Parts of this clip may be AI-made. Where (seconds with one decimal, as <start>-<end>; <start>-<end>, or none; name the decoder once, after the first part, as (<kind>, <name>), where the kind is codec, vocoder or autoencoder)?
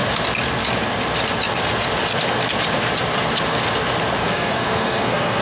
4.2-5.4 (codec, SNAC)